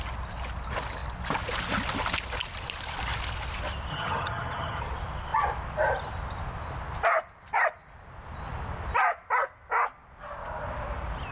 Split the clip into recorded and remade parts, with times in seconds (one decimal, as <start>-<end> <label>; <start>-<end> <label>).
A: 0.0-3.9 recorded; 3.9-4.8 remade; 4.8-11.3 recorded